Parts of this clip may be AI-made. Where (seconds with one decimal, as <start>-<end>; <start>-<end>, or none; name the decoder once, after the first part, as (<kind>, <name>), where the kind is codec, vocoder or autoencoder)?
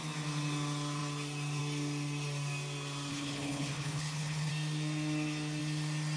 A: 3.1-4.5 (codec, HILCodec)